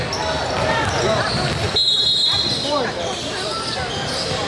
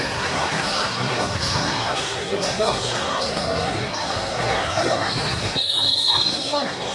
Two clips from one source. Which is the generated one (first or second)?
second